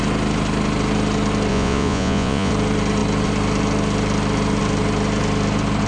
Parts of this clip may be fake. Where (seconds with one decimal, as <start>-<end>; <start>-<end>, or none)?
1.5-2.5